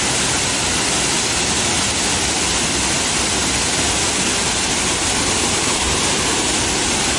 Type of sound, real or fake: real